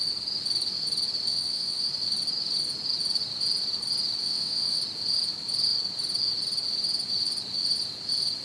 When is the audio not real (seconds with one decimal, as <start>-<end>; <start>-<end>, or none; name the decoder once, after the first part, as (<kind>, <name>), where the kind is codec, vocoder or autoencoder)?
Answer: 1.3-1.9 (vocoder, WaveNeXt); 4.2-4.8